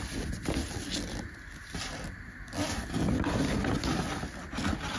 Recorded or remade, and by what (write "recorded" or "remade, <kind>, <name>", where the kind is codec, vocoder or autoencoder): recorded